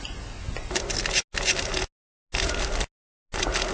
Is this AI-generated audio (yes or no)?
no